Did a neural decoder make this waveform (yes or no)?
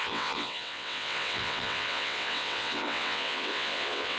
yes